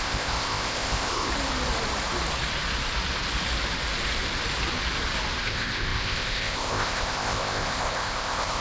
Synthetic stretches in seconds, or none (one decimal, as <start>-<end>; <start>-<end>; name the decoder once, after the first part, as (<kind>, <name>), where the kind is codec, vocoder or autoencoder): 0.0-1.3 (codec, ZipCodec); 5.4-8.6